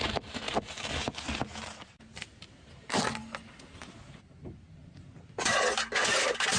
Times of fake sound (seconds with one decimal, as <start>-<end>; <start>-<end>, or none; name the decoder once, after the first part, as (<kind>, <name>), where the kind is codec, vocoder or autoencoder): none